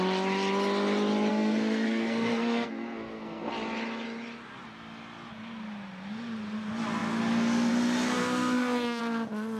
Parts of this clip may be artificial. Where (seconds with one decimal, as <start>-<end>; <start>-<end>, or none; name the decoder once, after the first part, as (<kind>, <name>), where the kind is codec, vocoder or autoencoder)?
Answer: 1.3-3.5 (codec, SNAC); 8.2-9.0